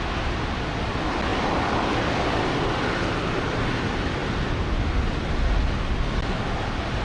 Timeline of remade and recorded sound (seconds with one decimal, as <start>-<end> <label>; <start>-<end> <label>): 0.0-7.0 recorded